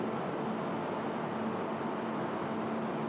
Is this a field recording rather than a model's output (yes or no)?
yes